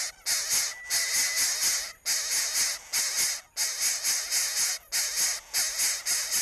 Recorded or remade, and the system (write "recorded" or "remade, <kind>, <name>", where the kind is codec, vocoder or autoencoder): recorded